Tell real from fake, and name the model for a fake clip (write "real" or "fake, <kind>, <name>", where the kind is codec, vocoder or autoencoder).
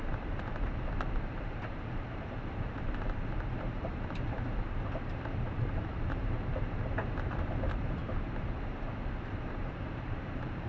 fake, vocoder, BigVGAN v2